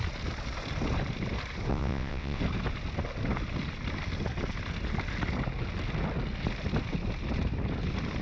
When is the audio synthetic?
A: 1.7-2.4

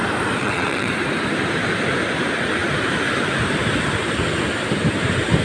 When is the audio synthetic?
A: 0.4-0.9

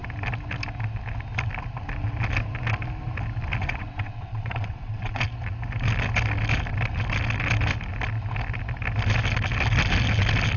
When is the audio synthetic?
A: 3.6-5.2

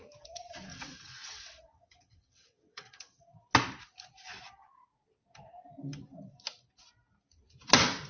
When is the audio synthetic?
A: 0.7-3.2

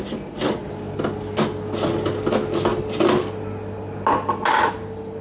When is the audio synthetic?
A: none

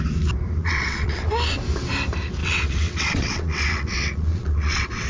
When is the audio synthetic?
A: 0.6-1.3; 2.4-5.1

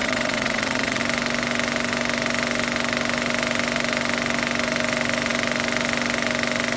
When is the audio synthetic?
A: 0.0-1.0